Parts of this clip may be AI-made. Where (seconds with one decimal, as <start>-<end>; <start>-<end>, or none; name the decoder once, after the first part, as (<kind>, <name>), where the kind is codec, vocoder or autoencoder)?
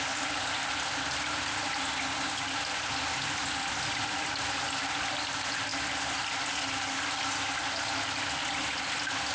none